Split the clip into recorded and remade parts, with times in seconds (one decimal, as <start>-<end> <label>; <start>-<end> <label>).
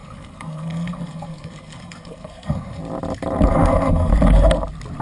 0.0-2.8 remade; 2.8-3.5 recorded; 3.5-4.1 remade; 4.1-5.0 recorded